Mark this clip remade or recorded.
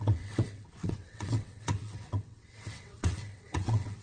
remade